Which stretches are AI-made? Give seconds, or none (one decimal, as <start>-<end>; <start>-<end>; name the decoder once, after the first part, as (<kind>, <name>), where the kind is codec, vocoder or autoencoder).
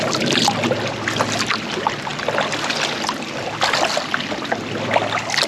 none